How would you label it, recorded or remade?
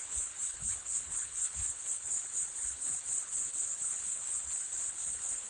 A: remade